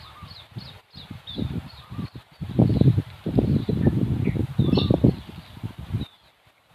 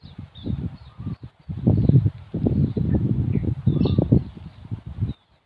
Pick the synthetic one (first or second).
second